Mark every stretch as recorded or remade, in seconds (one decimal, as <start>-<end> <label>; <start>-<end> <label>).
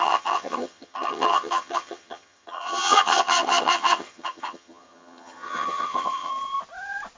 0.0-6.3 remade; 6.3-7.2 recorded